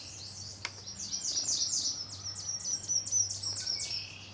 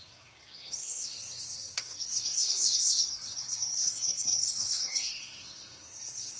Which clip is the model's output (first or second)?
second